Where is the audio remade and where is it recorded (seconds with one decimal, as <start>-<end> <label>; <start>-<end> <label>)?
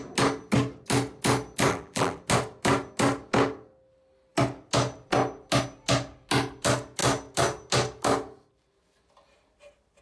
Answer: 0.0-1.7 recorded; 1.7-2.2 remade; 2.2-10.0 recorded